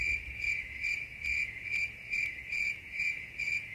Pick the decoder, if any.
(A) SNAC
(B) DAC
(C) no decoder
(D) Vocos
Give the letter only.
D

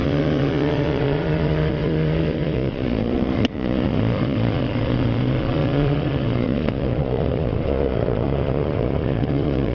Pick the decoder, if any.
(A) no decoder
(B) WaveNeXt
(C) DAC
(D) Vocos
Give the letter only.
D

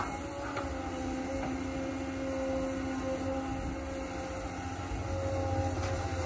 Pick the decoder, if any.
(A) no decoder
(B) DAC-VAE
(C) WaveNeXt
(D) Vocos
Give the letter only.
A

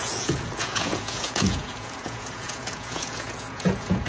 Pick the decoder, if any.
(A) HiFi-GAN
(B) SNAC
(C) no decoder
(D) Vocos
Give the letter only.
D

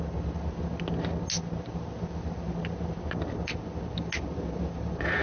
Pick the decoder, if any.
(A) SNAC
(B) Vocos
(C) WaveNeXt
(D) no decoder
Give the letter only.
D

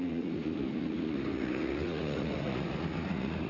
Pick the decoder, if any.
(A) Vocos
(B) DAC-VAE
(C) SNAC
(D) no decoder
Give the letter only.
A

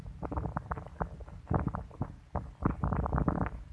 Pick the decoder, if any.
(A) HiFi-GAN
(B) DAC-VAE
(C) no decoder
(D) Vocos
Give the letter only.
C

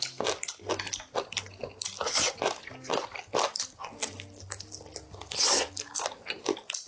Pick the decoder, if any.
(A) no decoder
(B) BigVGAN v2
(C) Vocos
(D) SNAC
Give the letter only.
A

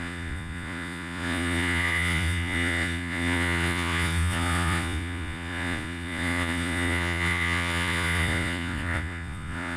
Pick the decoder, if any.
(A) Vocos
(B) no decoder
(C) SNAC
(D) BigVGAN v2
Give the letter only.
A